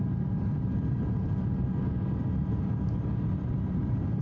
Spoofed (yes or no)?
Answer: no